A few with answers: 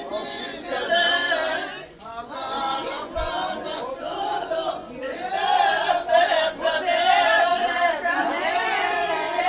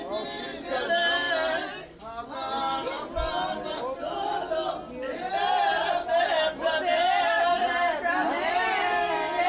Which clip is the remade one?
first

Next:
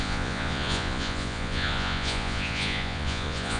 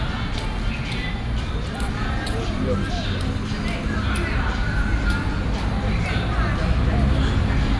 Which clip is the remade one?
first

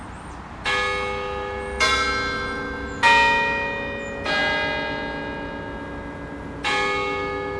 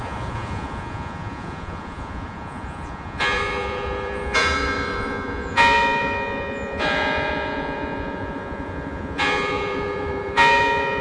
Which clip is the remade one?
second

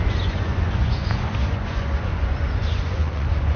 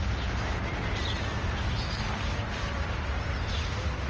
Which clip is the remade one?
first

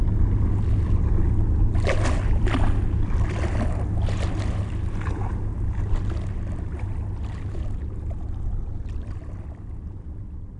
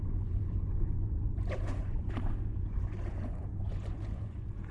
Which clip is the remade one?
second